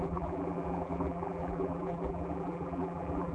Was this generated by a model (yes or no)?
yes